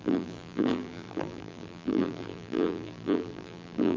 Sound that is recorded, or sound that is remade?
remade